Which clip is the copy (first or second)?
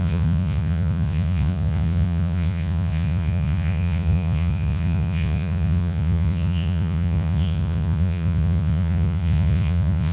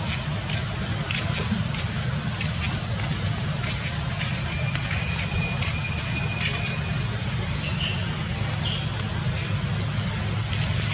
first